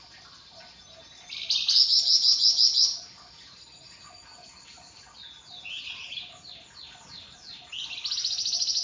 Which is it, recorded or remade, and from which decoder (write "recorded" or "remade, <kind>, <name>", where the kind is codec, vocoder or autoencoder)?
recorded